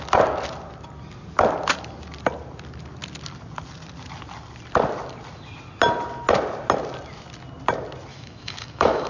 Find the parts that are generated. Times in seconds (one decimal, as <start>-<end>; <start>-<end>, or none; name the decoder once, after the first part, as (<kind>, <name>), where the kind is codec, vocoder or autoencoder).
8.1-9.1 (autoencoder, DAC-VAE)